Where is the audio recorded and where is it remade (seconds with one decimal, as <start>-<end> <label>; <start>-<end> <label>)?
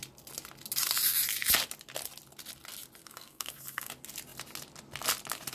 0.0-3.0 recorded; 3.0-3.9 remade; 3.9-5.5 recorded